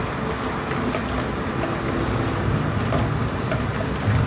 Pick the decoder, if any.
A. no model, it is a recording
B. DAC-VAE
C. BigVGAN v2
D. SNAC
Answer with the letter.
A